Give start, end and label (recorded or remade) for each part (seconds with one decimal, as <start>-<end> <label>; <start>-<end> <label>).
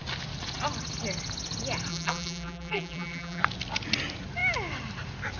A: 0.0-1.9 recorded; 1.9-3.4 remade; 3.4-5.4 recorded